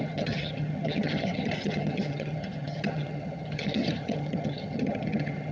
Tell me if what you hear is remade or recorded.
remade